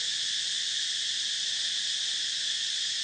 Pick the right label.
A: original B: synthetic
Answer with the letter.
A